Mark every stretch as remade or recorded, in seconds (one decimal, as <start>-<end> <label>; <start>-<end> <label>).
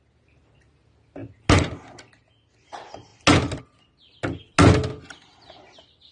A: 0.0-6.1 recorded